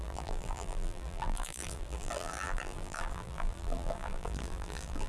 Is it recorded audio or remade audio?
remade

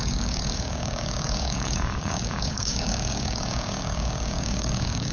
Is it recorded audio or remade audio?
remade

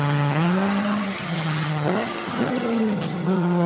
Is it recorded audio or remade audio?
remade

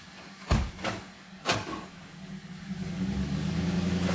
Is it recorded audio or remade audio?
remade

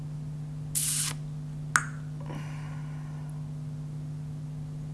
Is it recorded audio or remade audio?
recorded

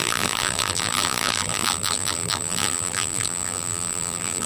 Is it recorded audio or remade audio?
remade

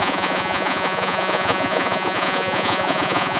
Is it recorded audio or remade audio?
remade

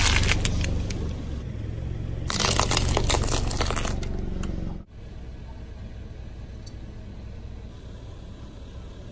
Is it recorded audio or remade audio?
recorded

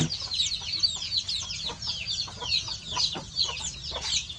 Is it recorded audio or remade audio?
recorded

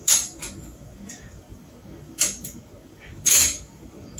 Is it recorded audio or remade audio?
remade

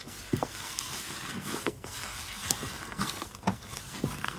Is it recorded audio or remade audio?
remade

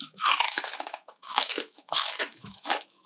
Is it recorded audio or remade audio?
remade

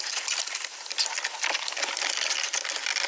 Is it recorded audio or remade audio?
recorded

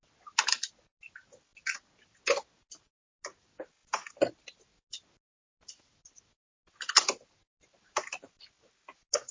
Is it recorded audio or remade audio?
recorded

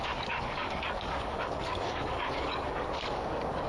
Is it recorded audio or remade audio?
remade